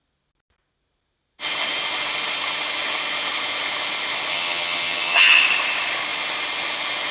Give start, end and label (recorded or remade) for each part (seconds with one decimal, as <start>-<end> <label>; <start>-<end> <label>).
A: 0.0-4.3 recorded; 4.3-5.4 remade; 5.4-7.1 recorded